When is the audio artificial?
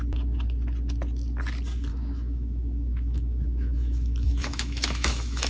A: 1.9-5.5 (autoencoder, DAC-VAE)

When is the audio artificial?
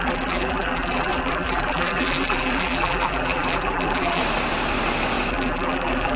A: 0.0-4.2 (vocoder, BigVGAN v2); 5.3-6.2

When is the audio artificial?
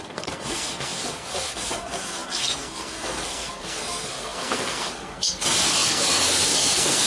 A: 0.0-7.1 (codec, SNAC)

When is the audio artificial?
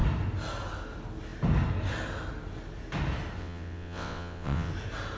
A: 3.4-4.7 (vocoder, WaveNeXt)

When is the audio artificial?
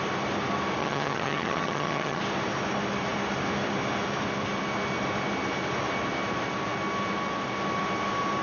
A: 0.8-2.2 (vocoder, HiFi-GAN)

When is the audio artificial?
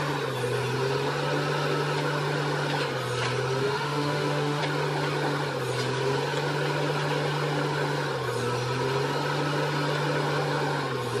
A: 3.6-4.6 (autoencoder, DAC-VAE)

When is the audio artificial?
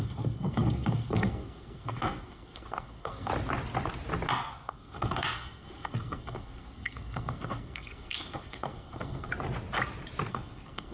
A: 0.0-3.3 (codec, SNAC); 4.3-9.3; 10.3-10.9